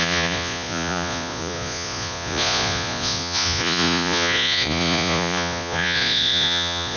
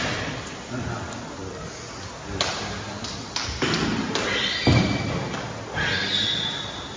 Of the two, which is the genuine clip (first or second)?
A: second